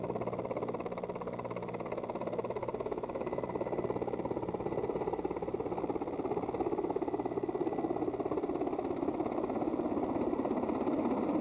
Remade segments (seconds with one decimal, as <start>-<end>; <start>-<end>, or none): 2.6-3.4